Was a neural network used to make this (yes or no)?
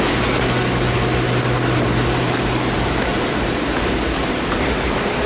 no